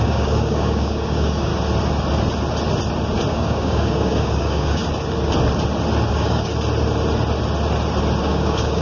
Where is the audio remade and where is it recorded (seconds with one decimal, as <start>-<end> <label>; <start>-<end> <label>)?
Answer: 0.0-1.5 remade; 1.5-3.3 recorded; 3.3-4.8 remade; 4.8-6.1 recorded; 6.1-6.5 remade; 6.5-8.2 recorded; 8.2-8.8 remade